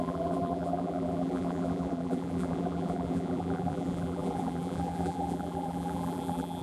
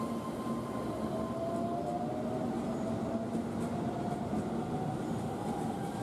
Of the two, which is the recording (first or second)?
second